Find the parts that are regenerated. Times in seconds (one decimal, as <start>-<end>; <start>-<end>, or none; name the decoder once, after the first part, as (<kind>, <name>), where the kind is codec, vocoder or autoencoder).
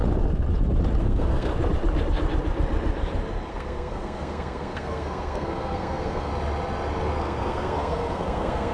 1.0-1.5 (codec, SNAC); 3.5-6.3; 7.2-8.7